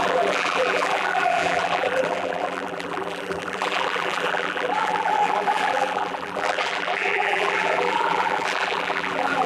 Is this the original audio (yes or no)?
no